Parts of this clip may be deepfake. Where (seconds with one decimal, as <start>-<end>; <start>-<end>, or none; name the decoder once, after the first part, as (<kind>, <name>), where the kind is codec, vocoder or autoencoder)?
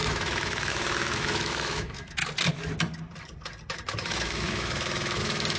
0.0-2.2 (autoencoder, DAC-VAE); 3.7-5.6